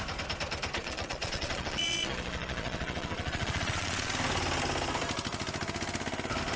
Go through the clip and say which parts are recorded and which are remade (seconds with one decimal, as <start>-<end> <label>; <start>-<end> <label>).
0.0-0.8 recorded; 0.8-4.1 remade; 4.1-6.6 recorded